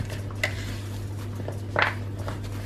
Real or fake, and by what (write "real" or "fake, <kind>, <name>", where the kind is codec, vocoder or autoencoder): real